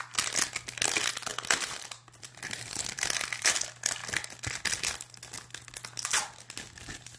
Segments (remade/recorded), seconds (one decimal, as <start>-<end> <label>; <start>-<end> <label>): 0.0-1.3 recorded; 1.3-3.6 remade; 3.6-7.2 recorded